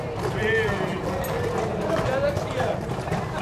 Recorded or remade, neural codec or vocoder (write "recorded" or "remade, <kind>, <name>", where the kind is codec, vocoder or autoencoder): recorded